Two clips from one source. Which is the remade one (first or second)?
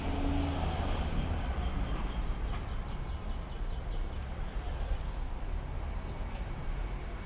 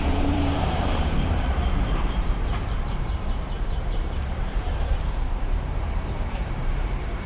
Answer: second